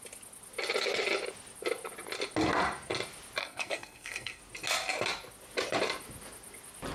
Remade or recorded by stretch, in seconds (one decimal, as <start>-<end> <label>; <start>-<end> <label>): 0.0-3.4 recorded; 3.4-4.4 remade; 4.4-6.9 recorded